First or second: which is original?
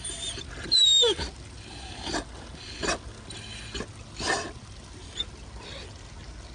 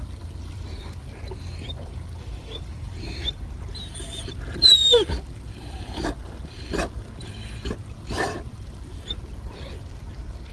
first